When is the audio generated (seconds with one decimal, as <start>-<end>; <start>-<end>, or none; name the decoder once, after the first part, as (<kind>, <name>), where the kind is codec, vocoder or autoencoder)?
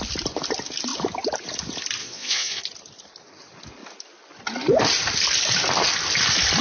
2.0-2.6 (vocoder, Vocos)